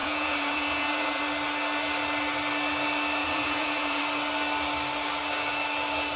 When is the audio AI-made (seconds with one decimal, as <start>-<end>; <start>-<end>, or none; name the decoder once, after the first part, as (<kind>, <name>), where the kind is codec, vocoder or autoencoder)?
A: 0.0-1.2 (vocoder, Vocos); 3.2-4.0